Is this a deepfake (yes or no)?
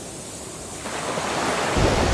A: no